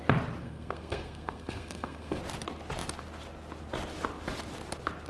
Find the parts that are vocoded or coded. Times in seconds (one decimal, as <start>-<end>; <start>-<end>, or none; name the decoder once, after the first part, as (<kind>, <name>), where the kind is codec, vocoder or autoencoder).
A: 0.4-2.2 (codec, SNAC)